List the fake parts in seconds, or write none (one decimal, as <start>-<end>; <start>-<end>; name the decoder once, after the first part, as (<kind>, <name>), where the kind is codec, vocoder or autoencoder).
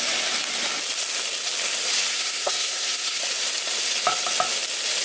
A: 2.1-3.2 (codec, SNAC)